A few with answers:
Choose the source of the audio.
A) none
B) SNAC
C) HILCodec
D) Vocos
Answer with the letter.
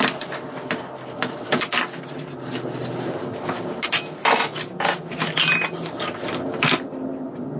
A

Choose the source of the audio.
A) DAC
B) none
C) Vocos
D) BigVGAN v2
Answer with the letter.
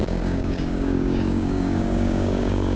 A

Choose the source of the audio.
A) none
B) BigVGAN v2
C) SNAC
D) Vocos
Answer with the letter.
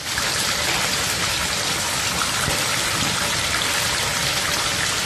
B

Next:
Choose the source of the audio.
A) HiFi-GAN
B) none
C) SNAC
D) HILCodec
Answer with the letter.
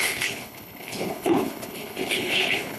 D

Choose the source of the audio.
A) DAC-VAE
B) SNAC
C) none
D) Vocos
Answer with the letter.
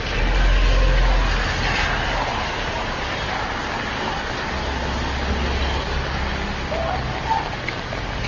C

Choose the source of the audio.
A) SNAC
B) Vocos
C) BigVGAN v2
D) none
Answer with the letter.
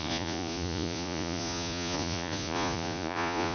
B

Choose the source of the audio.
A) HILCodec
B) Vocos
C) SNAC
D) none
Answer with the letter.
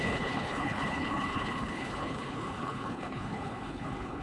A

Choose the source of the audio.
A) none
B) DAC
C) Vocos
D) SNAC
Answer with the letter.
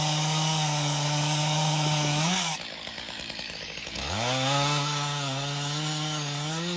B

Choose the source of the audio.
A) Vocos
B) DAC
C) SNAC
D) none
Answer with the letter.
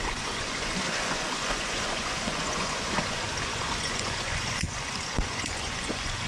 A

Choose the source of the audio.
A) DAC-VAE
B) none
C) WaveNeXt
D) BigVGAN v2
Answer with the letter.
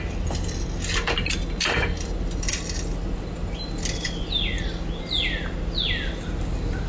B